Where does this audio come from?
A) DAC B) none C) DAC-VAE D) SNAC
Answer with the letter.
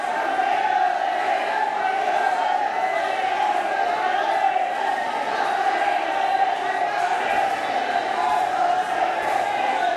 B